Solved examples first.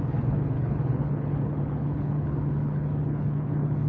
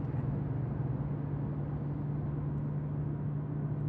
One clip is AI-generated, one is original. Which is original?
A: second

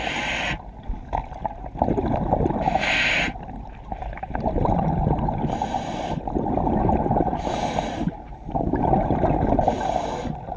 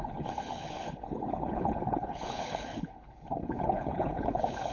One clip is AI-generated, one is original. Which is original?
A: first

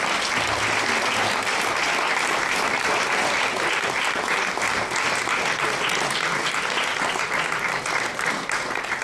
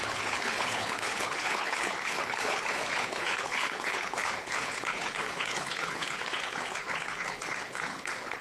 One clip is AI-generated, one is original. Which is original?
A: first